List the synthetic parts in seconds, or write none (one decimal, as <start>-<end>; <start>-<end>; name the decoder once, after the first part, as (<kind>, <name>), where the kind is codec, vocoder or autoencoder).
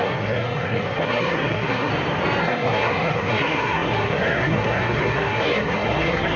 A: 0.0-1.9 (codec, SNAC); 2.4-6.4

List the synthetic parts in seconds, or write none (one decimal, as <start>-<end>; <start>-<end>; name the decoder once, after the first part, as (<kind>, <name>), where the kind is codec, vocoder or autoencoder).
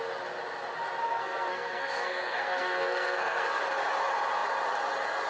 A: 1.0-3.6 (codec, SNAC)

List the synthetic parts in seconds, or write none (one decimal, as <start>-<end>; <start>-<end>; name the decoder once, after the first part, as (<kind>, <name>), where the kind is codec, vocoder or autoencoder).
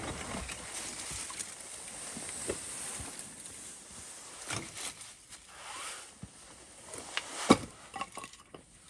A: none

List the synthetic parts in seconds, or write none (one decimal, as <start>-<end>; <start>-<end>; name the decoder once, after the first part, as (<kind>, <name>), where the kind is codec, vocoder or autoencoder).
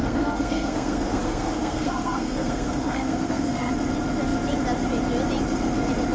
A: 0.0-3.7 (codec, SNAC)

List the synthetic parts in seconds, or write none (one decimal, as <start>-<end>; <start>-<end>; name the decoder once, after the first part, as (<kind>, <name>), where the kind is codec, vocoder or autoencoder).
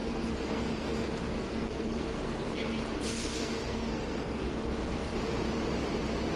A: 0.0-5.1 (codec, SNAC)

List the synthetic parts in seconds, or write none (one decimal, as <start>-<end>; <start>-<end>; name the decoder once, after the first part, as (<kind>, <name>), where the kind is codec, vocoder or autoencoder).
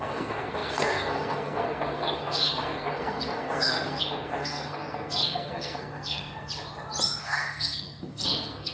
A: 0.0-6.5 (codec, SNAC); 7.2-8.7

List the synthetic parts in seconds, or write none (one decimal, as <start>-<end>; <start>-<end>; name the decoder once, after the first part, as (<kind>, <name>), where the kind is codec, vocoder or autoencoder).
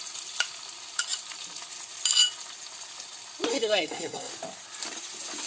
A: 3.5-4.3 (codec, SNAC)